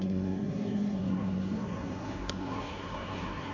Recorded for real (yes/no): no